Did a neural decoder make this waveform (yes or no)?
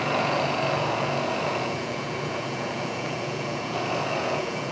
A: yes